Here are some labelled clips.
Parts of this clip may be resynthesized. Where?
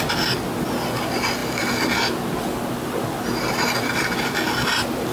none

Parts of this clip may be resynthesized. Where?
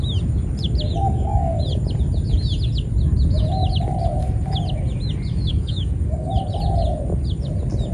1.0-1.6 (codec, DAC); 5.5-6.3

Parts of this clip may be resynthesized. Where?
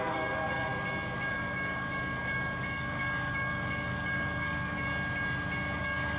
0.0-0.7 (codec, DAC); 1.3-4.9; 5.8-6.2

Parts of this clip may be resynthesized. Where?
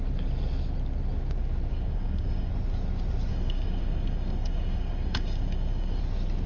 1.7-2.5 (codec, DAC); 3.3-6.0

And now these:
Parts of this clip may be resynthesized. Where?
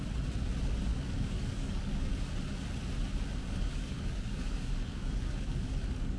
0.9-2.1 (codec, DAC); 3.4-6.2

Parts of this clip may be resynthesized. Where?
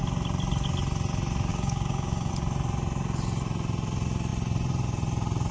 1.5-2.3 (codec, DAC)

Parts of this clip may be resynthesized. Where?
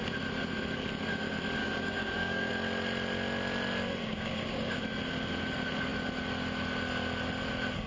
1.6-2.5 (codec, DAC); 4.0-4.8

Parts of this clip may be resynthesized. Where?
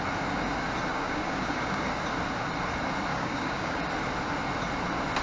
0.9-1.9 (codec, DAC); 3.1-3.8